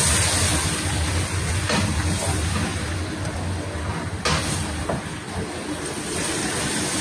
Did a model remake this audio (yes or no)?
no